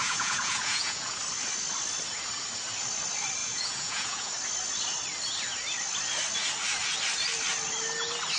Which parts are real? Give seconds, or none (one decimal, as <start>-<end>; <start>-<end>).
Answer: 1.1-3.4; 4.3-8.4